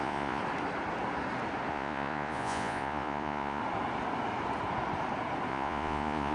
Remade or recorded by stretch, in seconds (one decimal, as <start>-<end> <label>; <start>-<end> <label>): 0.0-0.4 remade; 0.4-1.7 recorded; 1.7-3.6 remade; 3.6-5.5 recorded; 5.5-6.3 remade